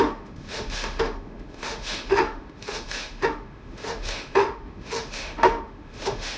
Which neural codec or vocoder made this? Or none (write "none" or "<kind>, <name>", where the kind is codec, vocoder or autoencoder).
autoencoder, DAC-VAE